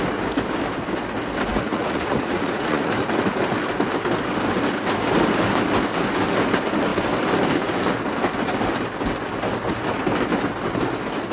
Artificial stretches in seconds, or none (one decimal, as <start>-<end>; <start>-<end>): 1.5-2.9